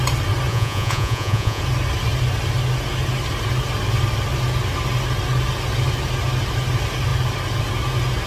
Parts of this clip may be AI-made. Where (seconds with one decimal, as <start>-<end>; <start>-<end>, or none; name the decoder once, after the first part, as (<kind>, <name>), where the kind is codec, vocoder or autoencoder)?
0.5-1.6 (vocoder, Vocos)